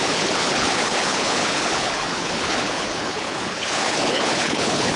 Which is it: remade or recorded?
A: remade